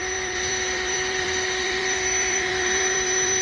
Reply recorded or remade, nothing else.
remade